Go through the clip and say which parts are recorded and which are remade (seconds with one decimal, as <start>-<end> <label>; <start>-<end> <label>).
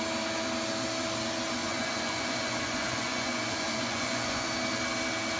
0.0-1.6 recorded; 1.6-4.5 remade; 4.5-5.4 recorded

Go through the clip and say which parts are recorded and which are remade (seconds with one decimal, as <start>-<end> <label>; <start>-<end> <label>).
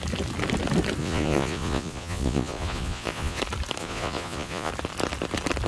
0.0-1.0 recorded; 1.0-3.4 remade; 3.4-3.8 recorded; 3.8-4.7 remade; 4.7-5.7 recorded